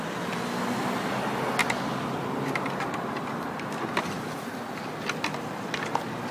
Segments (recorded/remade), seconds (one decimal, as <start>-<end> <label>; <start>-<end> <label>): 0.0-1.6 recorded; 1.6-2.1 remade; 2.1-6.3 recorded